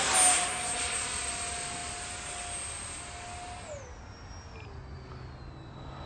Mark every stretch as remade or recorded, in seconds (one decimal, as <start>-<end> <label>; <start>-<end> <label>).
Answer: 0.0-6.1 recorded